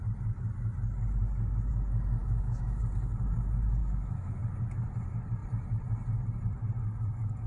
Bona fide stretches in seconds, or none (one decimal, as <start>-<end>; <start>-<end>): 0.0-2.2; 2.8-3.8; 4.3-7.5